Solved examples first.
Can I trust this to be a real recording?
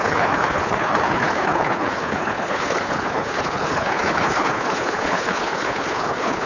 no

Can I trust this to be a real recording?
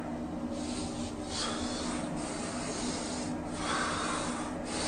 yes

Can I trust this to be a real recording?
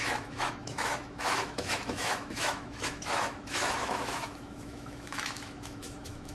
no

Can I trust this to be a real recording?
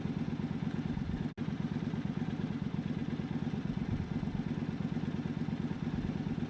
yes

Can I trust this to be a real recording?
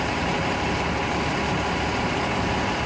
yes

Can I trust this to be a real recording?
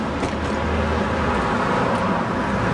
yes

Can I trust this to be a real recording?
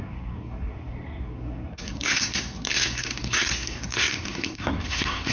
no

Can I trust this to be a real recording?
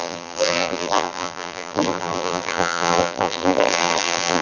no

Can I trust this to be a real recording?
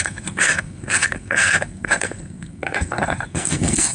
no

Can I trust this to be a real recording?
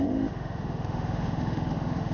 no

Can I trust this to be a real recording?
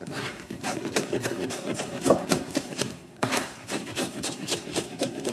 no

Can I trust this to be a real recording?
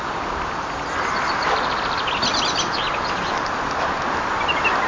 yes